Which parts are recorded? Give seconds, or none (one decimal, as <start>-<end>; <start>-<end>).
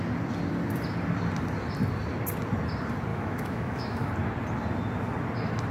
0.0-3.1; 4.1-5.7